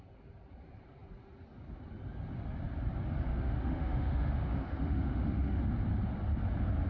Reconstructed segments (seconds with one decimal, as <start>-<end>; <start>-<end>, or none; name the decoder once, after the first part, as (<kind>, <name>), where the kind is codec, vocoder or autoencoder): 3.3-5.6 (autoencoder, DAC-VAE)